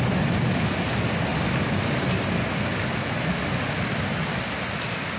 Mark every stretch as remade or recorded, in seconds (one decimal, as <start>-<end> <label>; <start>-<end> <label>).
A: 0.0-5.2 recorded